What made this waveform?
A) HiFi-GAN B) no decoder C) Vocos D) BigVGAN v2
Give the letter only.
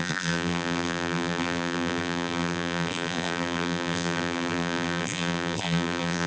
D